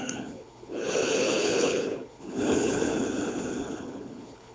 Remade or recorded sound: remade